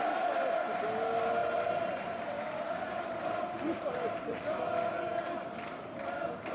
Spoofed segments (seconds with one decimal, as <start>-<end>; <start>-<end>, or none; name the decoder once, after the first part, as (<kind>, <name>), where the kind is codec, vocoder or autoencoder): 1.4-4.6 (vocoder, BigVGAN v2)